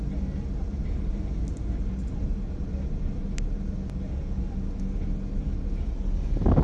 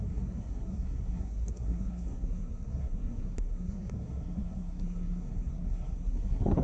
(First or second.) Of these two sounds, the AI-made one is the second